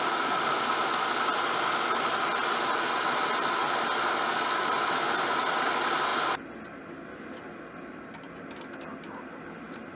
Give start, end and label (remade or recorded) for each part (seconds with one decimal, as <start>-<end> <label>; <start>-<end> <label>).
0.0-10.0 recorded